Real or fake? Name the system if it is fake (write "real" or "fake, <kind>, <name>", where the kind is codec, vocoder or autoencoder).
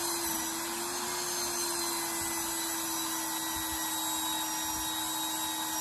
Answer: real